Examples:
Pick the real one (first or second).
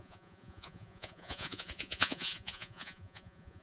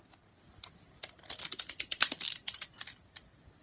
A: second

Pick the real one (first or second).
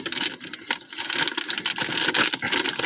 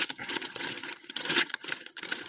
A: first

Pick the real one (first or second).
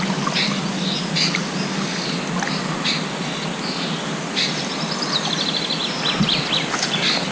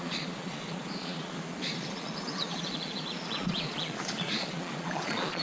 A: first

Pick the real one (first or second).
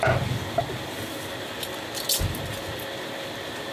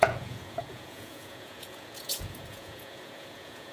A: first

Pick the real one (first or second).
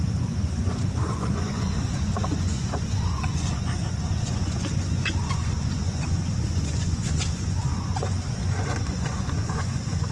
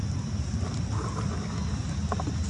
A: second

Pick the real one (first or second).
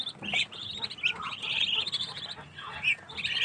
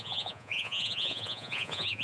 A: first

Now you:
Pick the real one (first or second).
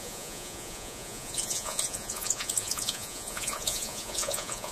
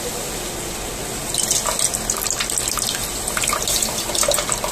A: second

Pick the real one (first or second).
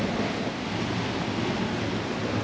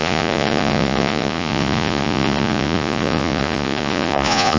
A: first